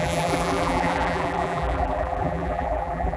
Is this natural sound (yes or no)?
no